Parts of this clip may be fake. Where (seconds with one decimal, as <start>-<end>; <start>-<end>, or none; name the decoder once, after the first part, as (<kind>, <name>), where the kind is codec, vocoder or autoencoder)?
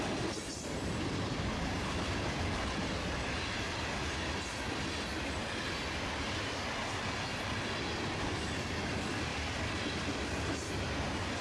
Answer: none